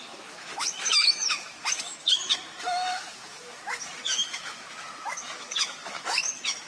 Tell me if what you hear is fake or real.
fake